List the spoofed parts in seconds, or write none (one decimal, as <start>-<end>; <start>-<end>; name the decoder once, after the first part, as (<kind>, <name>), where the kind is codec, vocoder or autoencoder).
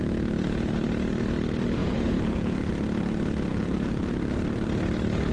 0.0-0.7 (vocoder, Vocos); 1.8-2.7; 3.5-4.1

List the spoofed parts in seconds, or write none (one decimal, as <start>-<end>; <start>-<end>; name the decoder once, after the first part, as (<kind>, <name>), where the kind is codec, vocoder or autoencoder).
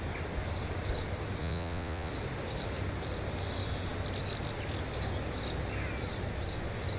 1.4-2.1 (vocoder, Vocos)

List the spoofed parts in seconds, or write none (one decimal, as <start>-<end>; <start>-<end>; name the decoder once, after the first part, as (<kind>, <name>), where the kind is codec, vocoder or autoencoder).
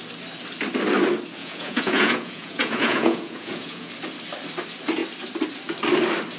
1.4-3.9 (vocoder, Vocos)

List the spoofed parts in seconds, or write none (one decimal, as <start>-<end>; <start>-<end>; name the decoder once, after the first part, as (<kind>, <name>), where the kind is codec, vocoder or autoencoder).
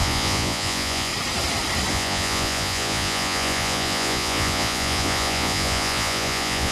0.0-1.1 (vocoder, Vocos); 1.9-6.7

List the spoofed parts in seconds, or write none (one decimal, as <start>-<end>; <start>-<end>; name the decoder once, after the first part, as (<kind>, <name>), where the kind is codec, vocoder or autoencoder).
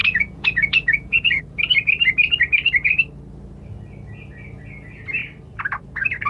0.0-1.4 (vocoder, Vocos)